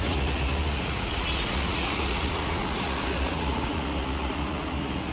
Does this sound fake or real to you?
fake